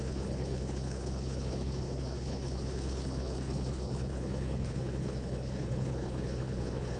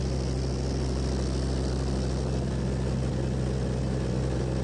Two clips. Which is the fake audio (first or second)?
first